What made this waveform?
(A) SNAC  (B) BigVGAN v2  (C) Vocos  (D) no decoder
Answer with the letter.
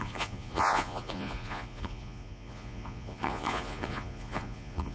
C